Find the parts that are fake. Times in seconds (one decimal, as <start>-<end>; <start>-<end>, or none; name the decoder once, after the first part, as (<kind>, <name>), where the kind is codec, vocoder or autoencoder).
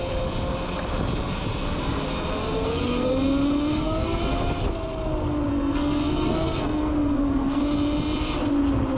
2.4-3.1 (codec, SNAC); 3.7-4.2; 5.5-7.6